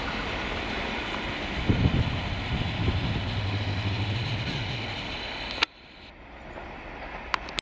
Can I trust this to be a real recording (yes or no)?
yes